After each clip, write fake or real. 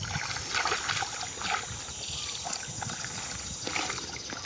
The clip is real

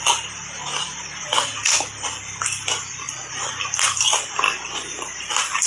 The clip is real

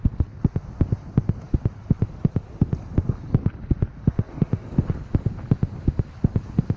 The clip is real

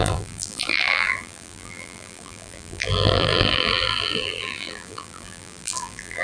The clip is fake